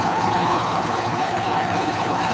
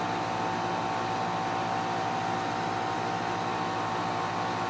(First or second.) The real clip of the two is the second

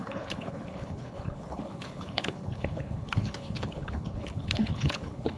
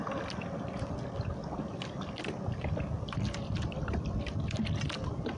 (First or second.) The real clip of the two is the second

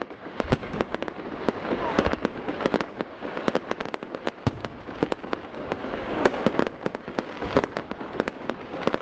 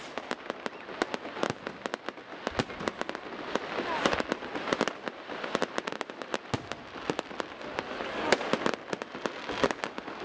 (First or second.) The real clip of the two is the second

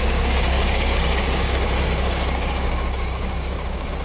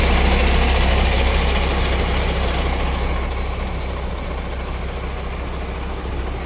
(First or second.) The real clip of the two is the second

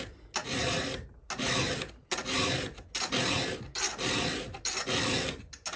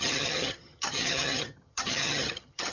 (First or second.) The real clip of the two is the first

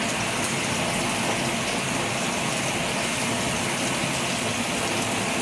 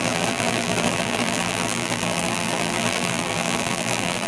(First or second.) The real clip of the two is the first